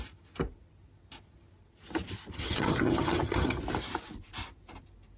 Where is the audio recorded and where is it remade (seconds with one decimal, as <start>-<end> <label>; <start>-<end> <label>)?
0.0-2.3 recorded; 2.3-3.6 remade; 3.6-5.2 recorded